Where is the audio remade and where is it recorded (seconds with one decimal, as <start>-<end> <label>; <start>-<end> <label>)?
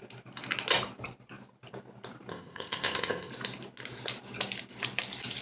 0.0-2.3 recorded; 2.3-3.3 remade; 3.3-5.4 recorded